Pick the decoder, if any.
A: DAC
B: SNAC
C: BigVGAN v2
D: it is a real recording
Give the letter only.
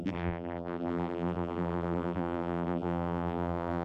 C